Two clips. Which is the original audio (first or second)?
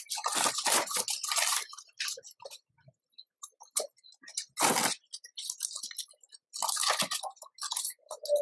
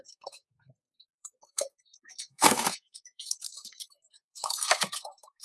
first